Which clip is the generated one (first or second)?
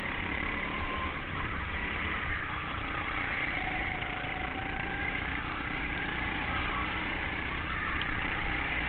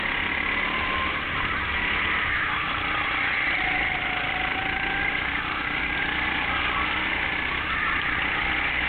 first